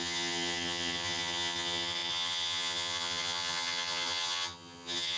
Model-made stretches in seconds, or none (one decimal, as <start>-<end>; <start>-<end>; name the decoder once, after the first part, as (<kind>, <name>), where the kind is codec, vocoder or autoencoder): 0.0-5.2 (vocoder, HiFi-GAN)

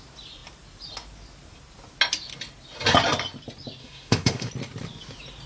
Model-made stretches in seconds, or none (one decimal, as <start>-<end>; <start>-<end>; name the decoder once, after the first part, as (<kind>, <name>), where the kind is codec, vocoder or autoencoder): 3.8-4.5 (autoencoder, DAC-VAE)

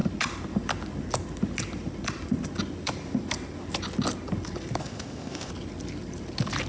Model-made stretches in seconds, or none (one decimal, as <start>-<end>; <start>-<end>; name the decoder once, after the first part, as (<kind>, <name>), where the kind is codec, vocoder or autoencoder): 4.8-5.5 (codec, ZipCodec)

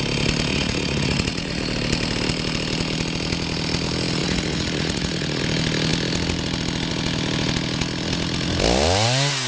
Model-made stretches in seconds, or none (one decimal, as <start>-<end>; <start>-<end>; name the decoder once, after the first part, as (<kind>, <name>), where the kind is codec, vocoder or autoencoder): 0.5-1.6 (vocoder, Vocos); 4.2-5.4